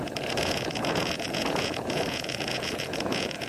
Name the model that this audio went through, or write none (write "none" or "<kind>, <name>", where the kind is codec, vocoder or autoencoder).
vocoder, Vocos